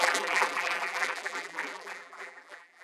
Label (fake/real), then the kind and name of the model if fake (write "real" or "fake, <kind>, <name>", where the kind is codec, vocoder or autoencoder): fake, vocoder, BigVGAN v2